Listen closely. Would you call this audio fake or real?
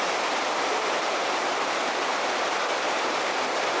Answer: real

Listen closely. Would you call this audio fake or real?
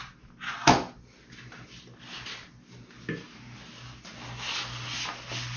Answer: real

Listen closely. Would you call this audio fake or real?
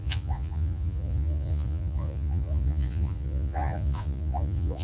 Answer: fake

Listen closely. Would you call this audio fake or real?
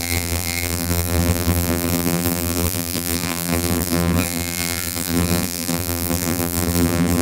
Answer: fake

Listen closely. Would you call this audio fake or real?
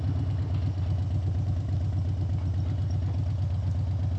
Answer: real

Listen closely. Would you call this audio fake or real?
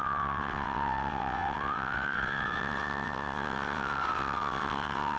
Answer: fake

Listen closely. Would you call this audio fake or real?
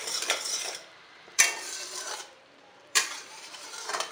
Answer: fake